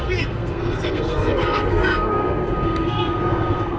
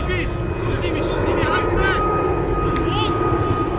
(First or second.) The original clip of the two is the second